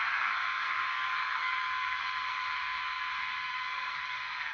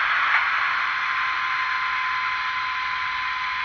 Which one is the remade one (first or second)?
first